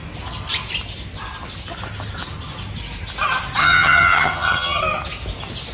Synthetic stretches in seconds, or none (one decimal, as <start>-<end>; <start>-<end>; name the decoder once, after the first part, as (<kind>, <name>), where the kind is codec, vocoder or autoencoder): 3.6-4.8 (vocoder, HiFi-GAN)

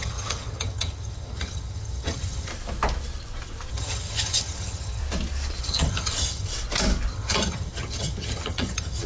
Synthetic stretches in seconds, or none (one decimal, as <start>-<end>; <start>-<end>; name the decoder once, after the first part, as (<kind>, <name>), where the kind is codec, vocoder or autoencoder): 0.0-2.5 (vocoder, HiFi-GAN); 3.7-5.0; 5.6-6.5; 7.1-9.1

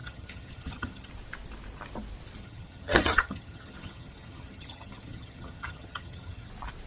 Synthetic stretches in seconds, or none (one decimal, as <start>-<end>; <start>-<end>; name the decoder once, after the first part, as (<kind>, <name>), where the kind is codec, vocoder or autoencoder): 0.0-1.1 (vocoder, HiFi-GAN); 2.4-6.5

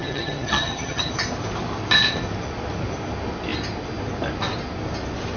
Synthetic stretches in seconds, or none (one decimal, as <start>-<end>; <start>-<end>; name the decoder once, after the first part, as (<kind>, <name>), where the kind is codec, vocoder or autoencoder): 0.0-1.1 (vocoder, HiFi-GAN)